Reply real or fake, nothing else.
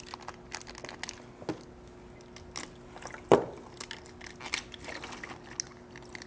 real